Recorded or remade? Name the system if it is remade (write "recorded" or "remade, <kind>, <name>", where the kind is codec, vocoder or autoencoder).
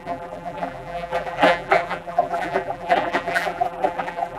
remade, vocoder, BigVGAN v2